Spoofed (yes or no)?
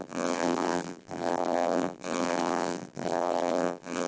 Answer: yes